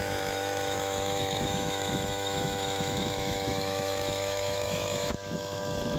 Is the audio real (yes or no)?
no